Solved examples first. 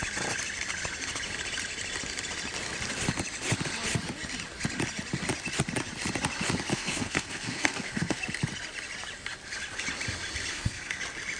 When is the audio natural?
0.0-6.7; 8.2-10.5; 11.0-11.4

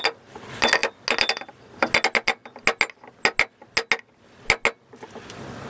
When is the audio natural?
0.0-5.7

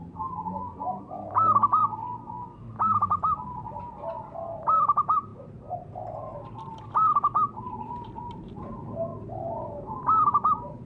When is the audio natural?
1.8-4.6; 5.3-7.6

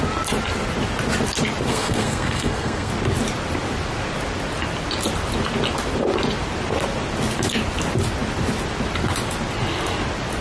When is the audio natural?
0.0-1.7; 2.9-10.4

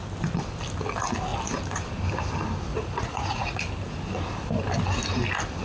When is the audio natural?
0.0-2.7; 3.6-5.6